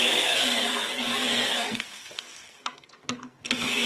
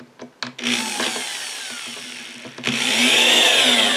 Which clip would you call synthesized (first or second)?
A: first